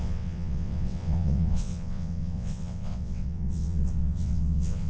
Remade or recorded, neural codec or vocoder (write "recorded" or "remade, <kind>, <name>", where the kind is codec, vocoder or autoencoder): remade, vocoder, WaveNeXt